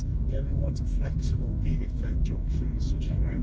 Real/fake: fake